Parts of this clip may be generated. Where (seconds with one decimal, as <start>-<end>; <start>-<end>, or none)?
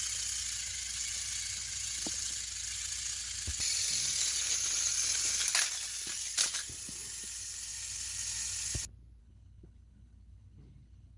9.2-11.2